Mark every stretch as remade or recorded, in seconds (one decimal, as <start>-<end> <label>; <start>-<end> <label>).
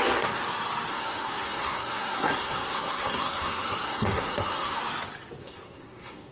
0.0-0.4 remade; 0.4-0.9 recorded; 0.9-4.8 remade; 4.8-5.4 recorded; 5.4-6.3 remade